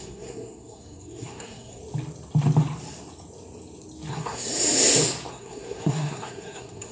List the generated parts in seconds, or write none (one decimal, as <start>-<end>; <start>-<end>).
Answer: 0.0-1.8; 4.1-4.5; 5.3-6.9